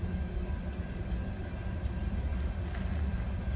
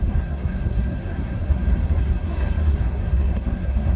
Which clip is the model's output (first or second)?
second